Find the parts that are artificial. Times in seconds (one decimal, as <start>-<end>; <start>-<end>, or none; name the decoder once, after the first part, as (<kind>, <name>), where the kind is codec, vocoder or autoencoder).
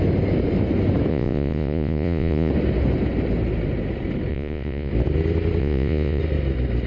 1.1-2.5 (vocoder, Vocos); 4.3-4.9; 5.6-6.2